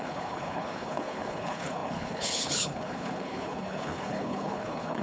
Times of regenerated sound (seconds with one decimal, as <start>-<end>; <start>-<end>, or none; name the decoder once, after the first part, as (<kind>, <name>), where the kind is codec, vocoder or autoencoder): 0.0-5.0 (codec, HILCodec)